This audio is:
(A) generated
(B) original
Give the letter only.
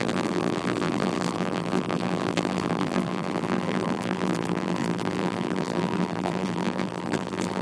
A